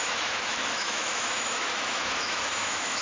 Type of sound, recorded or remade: remade